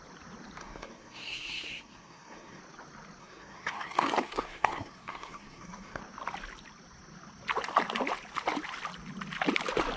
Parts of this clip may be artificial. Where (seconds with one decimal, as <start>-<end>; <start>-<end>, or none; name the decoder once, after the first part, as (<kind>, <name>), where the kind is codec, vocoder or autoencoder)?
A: 0.6-2.6 (codec, SNAC); 3.2-6.0

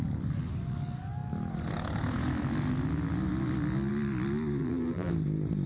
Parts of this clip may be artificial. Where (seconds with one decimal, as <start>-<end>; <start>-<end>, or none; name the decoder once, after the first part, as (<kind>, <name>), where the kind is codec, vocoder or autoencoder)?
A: 4.6-5.1 (vocoder, BigVGAN v2)

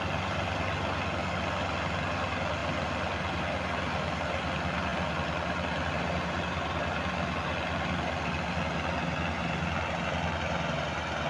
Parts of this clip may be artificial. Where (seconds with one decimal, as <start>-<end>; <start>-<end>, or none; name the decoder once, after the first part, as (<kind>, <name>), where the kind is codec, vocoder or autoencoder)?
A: none

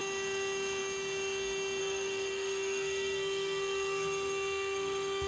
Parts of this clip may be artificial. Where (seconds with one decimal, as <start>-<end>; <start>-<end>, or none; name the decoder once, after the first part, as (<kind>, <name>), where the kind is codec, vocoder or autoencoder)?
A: 1.8-5.3 (codec, SNAC)

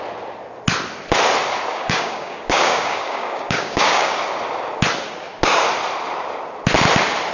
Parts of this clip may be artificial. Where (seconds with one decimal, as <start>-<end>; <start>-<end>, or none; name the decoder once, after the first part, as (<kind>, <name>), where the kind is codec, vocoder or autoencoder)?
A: 1.7-4.2 (codec, DAC)

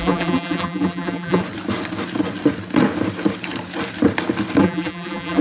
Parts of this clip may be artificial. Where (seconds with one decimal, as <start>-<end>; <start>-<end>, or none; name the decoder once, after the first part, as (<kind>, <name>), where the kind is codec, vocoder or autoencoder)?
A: 0.0-1.4 (vocoder, BigVGAN v2); 4.6-5.4

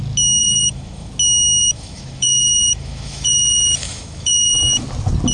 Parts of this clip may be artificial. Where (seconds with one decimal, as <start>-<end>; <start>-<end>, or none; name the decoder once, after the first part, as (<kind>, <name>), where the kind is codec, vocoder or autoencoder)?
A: 0.4-1.1 (autoencoder, DAC-VAE); 1.6-4.8

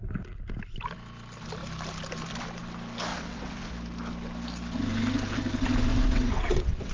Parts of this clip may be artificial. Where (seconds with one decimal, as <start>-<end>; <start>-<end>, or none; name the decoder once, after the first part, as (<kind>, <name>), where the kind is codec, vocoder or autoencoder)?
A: 3.1-3.7 (vocoder, WaveNeXt); 5.9-6.9